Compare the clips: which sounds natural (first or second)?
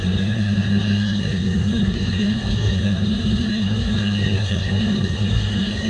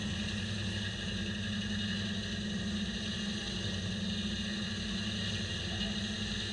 second